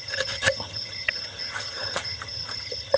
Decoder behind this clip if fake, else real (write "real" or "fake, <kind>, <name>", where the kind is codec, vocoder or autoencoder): fake, vocoder, HiFi-GAN